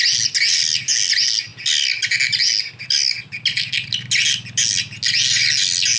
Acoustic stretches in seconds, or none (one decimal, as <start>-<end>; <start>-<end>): 0.0-6.0